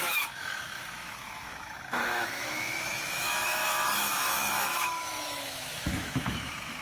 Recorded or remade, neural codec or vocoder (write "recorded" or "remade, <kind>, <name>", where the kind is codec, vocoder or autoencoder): remade, autoencoder, DAC-VAE